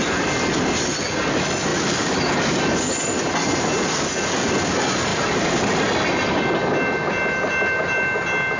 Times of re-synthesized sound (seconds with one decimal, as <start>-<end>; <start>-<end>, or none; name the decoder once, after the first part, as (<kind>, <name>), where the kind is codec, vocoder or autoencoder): 1.7-2.6 (vocoder, BigVGAN v2); 5.1-6.1